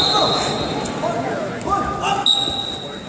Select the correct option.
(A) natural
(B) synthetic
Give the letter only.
A